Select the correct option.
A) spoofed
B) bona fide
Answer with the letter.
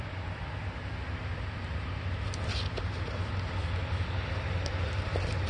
B